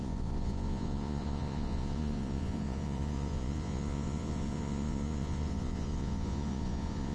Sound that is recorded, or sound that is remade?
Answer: remade